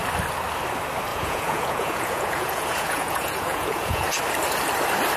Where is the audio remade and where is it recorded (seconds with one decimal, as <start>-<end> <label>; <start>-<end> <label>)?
0.0-1.1 recorded; 1.1-4.2 remade; 4.2-5.2 recorded